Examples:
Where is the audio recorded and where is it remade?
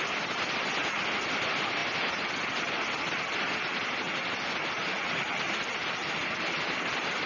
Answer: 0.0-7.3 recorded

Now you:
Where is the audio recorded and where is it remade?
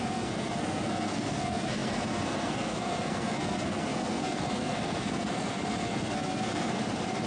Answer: 0.0-6.8 remade; 6.8-7.3 recorded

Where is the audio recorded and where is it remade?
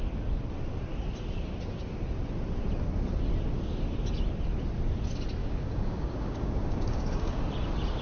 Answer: 0.0-5.4 recorded; 5.4-7.4 remade; 7.4-8.0 recorded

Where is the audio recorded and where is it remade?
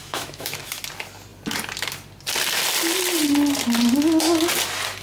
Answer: 0.0-0.6 remade; 0.6-5.0 recorded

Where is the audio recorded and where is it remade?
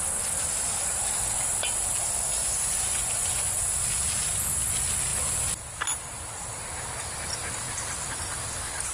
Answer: 0.0-2.4 recorded; 2.4-3.6 remade; 3.6-8.9 recorded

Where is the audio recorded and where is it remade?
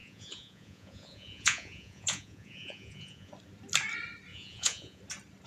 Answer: 0.0-3.3 remade; 3.3-4.3 recorded; 4.3-5.0 remade; 5.0-5.5 recorded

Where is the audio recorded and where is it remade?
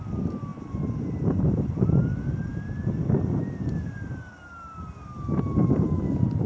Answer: 0.0-6.5 recorded